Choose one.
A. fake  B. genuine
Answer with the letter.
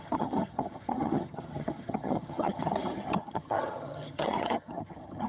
A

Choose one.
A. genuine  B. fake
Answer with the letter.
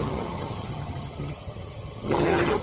B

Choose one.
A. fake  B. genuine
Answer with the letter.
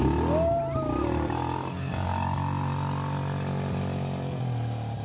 B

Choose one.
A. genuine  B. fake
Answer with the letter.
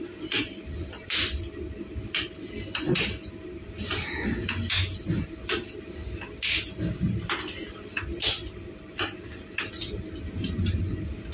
A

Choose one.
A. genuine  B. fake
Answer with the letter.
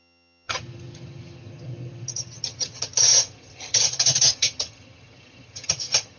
B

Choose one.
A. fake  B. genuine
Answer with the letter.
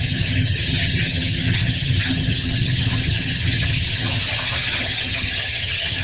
A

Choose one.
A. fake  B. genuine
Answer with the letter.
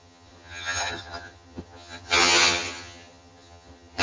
A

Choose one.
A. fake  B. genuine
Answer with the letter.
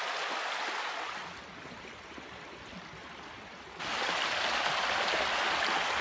B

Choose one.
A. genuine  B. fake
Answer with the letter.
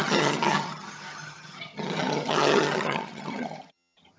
B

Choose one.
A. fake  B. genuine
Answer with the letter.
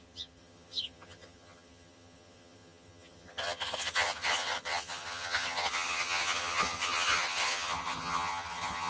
A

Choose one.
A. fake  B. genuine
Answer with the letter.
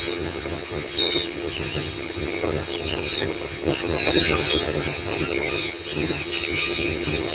A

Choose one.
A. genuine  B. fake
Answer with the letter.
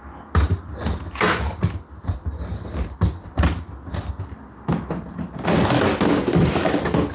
A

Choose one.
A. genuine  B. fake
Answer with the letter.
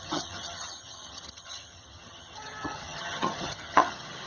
B